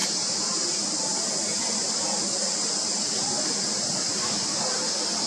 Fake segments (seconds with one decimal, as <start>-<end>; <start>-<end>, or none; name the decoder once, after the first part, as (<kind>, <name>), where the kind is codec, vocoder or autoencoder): none